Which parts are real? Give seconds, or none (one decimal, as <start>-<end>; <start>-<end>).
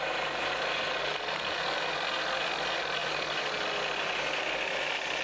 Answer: 0.0-5.2